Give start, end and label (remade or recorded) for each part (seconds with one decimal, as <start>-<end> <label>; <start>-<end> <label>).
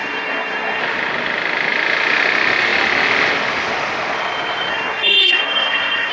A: 0.0-0.8 remade; 0.8-4.7 recorded; 4.7-6.1 remade